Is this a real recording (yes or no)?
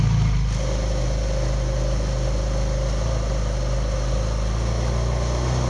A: yes